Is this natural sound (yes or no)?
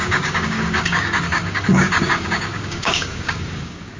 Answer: no